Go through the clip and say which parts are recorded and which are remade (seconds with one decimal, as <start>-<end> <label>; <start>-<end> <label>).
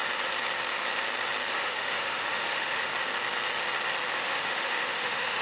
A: 0.0-1.5 recorded; 1.5-2.9 remade; 2.9-4.1 recorded; 4.1-5.4 remade